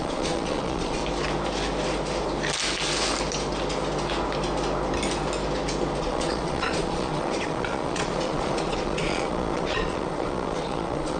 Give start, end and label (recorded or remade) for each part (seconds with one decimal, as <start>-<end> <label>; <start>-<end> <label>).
0.0-1.0 remade; 1.0-6.0 recorded; 6.0-11.2 remade

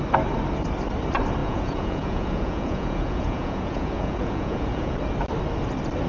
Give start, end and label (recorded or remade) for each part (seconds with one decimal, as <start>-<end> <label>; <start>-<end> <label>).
0.0-1.4 recorded; 1.4-5.0 remade; 5.0-6.1 recorded

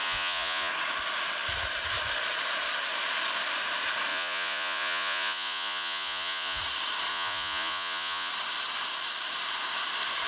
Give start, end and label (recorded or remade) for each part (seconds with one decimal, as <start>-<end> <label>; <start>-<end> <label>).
0.0-0.7 remade; 0.7-4.1 recorded; 4.1-6.6 remade; 6.6-7.1 recorded; 7.1-8.3 remade; 8.3-10.3 recorded

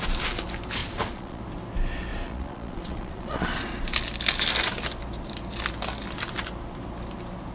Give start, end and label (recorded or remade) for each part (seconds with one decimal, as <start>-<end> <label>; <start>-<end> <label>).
0.0-0.8 recorded; 0.8-1.4 remade; 1.4-2.1 recorded; 2.1-3.6 remade; 3.6-7.5 recorded

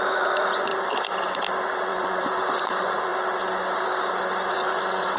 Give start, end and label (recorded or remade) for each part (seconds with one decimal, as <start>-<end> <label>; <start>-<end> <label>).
0.0-0.7 remade; 0.7-1.5 recorded; 1.5-3.1 remade; 3.1-4.5 recorded; 4.5-5.2 remade

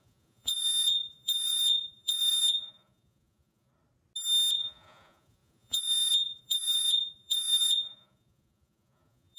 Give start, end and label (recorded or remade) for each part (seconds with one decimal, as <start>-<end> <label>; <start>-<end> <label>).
0.0-3.7 remade; 3.7-4.6 recorded; 4.6-9.4 remade

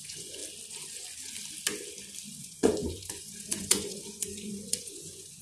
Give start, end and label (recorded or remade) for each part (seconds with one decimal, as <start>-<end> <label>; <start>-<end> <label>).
0.0-0.4 remade; 0.4-2.4 recorded; 2.4-5.4 remade